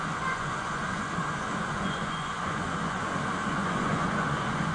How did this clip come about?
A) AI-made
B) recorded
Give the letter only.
A